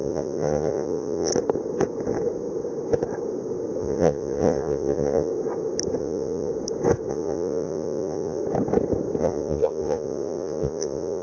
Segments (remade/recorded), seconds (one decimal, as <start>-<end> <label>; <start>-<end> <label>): 0.0-1.3 remade; 1.3-3.8 recorded; 3.8-5.3 remade; 5.3-6.0 recorded; 6.0-6.5 remade; 6.5-7.1 recorded; 7.1-8.4 remade; 8.4-9.2 recorded; 9.2-11.2 remade